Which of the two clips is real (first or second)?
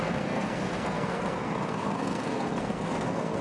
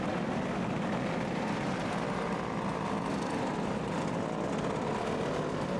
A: second